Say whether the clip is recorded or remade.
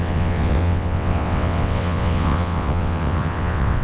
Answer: remade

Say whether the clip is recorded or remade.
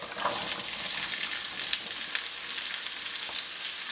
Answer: recorded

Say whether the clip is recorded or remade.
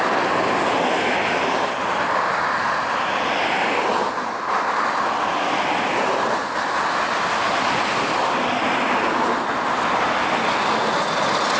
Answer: recorded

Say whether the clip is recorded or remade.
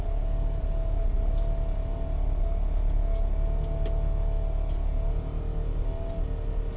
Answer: recorded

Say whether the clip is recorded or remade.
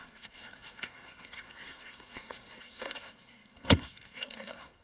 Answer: remade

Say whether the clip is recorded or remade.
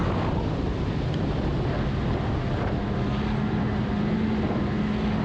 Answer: recorded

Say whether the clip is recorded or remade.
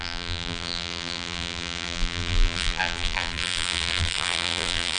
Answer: remade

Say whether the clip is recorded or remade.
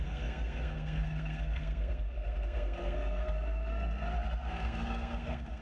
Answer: remade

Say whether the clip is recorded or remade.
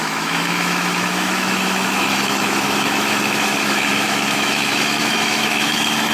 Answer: remade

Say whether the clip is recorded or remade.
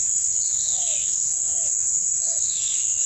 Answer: remade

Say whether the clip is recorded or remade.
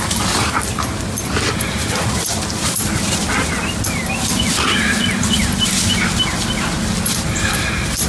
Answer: recorded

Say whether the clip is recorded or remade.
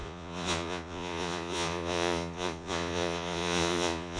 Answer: remade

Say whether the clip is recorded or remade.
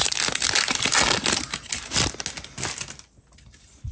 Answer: recorded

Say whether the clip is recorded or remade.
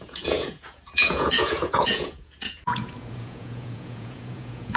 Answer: remade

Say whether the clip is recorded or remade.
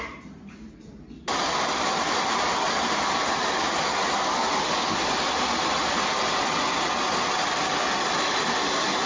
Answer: recorded